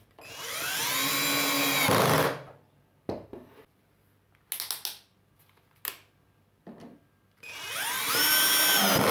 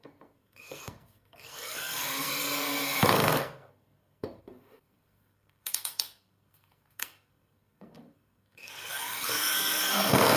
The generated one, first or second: second